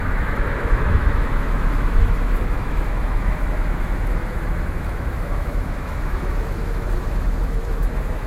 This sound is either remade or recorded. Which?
remade